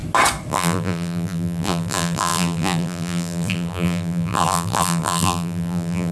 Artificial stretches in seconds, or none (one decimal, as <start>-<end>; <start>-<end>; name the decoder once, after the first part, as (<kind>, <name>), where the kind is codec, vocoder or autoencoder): 0.5-6.1 (vocoder, BigVGAN v2)